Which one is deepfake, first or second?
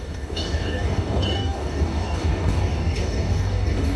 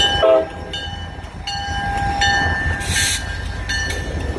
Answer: first